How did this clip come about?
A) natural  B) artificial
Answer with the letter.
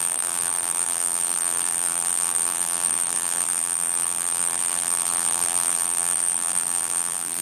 B